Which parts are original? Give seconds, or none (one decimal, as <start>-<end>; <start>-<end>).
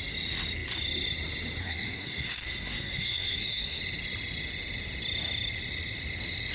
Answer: 0.0-1.6; 3.8-6.5